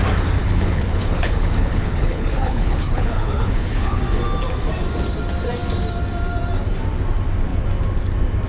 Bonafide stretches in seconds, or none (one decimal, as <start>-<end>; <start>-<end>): 0.0-0.4; 4.0-8.5

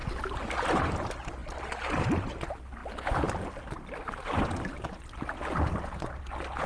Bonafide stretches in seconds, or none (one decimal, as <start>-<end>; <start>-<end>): 0.0-6.7

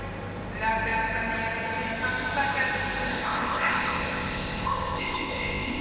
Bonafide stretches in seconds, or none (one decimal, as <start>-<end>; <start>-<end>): 0.0-3.1